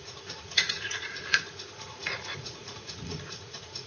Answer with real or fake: fake